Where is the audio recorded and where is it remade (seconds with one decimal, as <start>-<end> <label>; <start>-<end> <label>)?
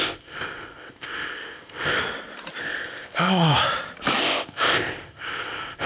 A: 0.0-2.0 remade; 2.0-2.6 recorded; 2.6-3.6 remade; 3.6-4.2 recorded; 4.2-5.9 remade